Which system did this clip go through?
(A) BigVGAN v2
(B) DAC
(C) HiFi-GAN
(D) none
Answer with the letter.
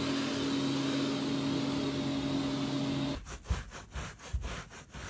D